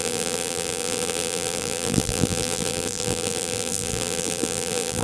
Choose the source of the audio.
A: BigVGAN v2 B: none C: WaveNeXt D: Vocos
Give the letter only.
A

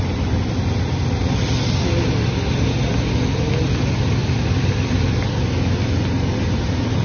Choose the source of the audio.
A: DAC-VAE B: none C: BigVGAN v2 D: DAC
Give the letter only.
B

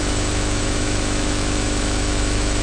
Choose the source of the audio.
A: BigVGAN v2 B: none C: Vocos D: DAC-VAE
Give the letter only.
D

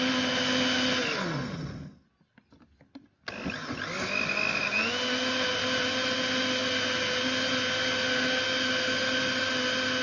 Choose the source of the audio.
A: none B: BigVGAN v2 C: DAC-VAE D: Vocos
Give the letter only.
A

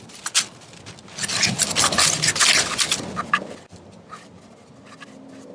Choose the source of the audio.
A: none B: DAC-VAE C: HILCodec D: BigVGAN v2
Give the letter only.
A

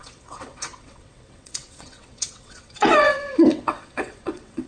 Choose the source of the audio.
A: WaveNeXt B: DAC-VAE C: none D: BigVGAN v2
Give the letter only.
A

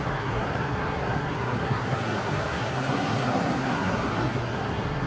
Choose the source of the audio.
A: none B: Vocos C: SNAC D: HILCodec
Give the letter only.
C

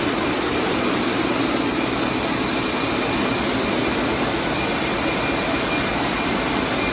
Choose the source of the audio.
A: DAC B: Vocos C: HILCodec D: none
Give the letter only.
D